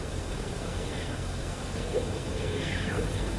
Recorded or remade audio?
remade